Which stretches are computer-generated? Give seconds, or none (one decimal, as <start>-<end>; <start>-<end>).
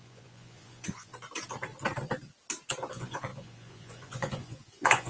0.0-1.1; 2.9-5.1